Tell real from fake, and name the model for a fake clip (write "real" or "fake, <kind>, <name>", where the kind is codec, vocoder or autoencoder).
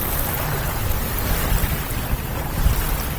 real